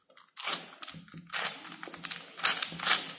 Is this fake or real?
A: real